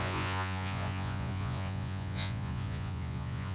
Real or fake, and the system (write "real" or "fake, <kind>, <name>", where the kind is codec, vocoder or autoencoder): fake, vocoder, Vocos